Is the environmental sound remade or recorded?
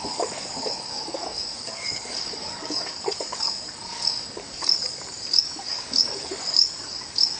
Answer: remade